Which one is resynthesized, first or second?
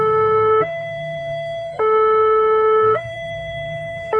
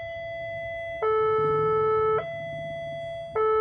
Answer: first